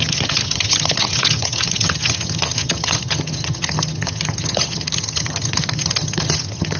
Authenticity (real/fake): fake